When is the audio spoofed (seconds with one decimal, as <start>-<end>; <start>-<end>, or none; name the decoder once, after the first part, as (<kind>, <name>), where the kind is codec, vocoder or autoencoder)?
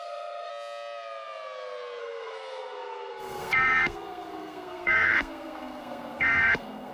0.0-0.5 (codec, SNAC); 2.0-6.9